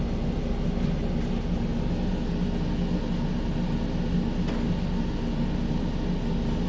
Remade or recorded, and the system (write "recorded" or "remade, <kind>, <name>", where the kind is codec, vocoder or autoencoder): recorded